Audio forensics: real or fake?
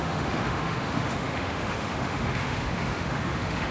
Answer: fake